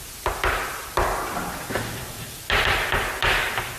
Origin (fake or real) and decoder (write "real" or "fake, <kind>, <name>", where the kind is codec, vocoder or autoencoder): real